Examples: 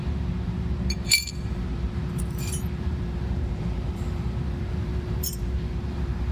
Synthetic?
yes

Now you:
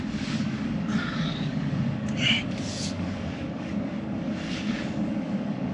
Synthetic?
yes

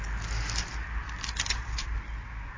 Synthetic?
no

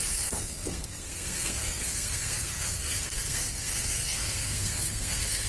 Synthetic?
yes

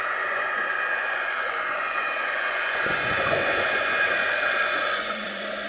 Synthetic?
yes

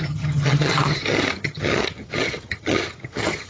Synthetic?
yes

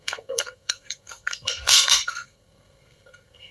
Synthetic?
yes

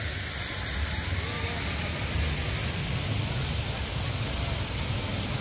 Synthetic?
no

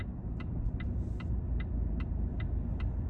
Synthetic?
no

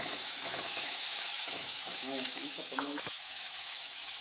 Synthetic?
yes